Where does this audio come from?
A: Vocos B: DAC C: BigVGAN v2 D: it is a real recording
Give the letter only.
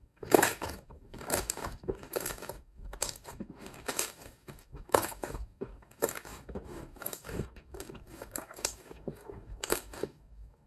B